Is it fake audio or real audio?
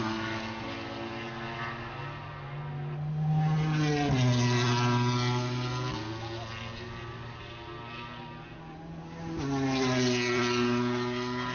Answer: real